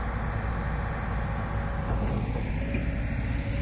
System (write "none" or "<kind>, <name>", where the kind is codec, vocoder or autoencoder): none